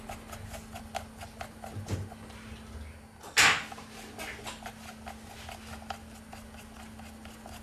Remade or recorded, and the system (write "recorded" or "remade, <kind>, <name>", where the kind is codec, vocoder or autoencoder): recorded